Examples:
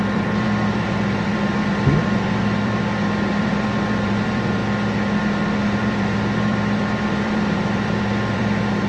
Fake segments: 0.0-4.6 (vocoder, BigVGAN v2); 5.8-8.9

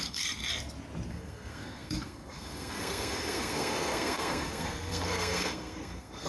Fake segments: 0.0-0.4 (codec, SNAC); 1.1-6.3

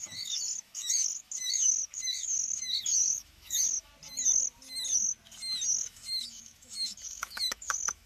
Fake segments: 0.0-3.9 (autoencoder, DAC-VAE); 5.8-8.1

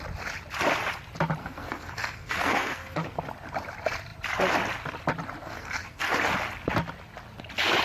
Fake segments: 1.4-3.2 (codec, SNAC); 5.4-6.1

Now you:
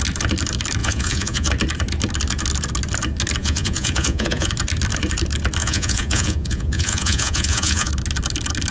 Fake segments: 0.8-1.5 (vocoder, Vocos); 3.4-4.5; 5.6-7.9

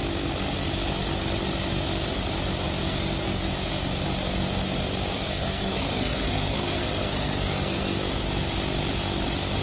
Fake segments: 2.8-3.5 (codec, SNAC); 5.1-8.0